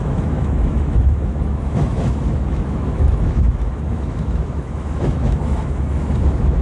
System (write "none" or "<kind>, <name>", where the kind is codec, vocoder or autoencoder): autoencoder, DAC-VAE